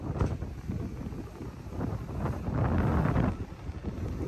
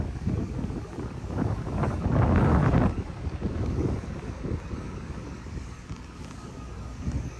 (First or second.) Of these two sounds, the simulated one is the second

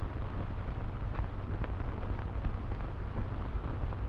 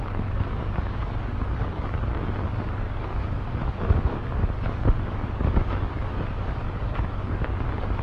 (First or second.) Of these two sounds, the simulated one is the second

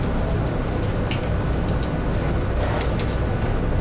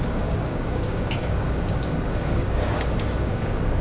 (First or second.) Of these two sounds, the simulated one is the second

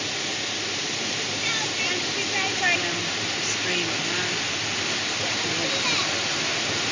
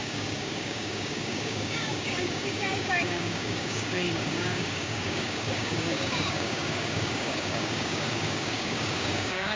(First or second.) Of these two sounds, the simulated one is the second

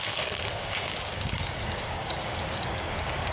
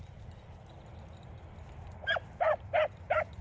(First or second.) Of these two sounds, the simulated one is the first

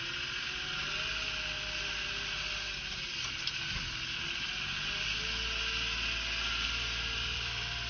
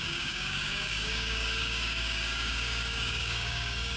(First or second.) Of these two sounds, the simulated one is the second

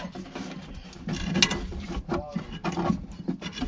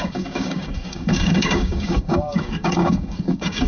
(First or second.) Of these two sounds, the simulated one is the second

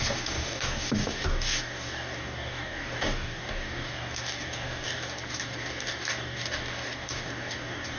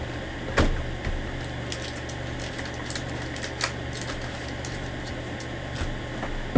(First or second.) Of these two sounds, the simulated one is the first